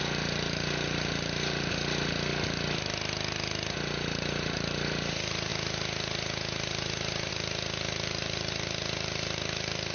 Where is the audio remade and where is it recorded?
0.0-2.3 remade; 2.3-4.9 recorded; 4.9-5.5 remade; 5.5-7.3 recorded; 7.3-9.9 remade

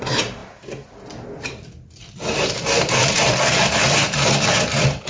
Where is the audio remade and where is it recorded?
0.0-5.1 remade